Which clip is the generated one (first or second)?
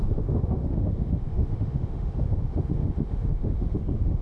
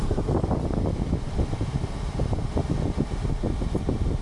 first